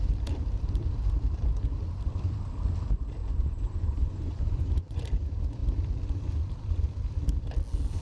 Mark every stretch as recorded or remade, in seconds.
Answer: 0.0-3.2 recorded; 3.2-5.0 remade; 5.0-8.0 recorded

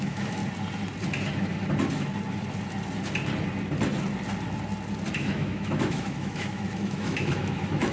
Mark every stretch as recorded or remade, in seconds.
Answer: 0.0-0.4 remade; 0.4-5.1 recorded; 5.1-7.9 remade

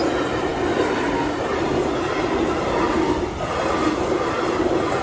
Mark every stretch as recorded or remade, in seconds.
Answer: 0.0-5.0 recorded

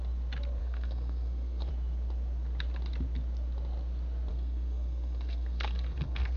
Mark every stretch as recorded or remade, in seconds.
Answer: 0.0-0.6 recorded; 0.6-1.7 remade; 1.7-4.3 recorded; 4.3-6.4 remade

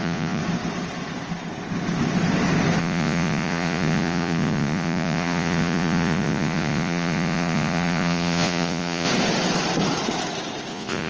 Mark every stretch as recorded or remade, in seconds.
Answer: 0.0-0.4 remade; 0.4-2.8 recorded; 2.8-9.1 remade; 9.1-10.7 recorded; 10.7-11.1 remade

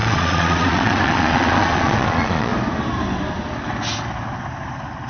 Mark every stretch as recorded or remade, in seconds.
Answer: 0.0-2.5 remade; 2.5-5.1 recorded